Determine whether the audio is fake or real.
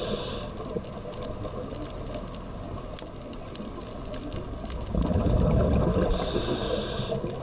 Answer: real